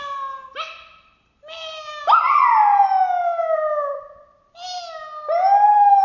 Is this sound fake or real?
real